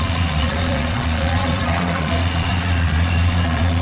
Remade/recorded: remade